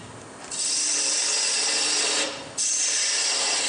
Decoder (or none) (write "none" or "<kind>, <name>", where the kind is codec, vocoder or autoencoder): vocoder, BigVGAN v2